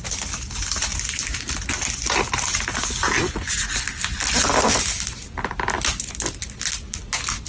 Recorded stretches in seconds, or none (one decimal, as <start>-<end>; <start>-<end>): 0.0-7.5